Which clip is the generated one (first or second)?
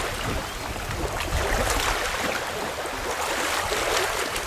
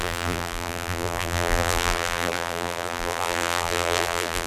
second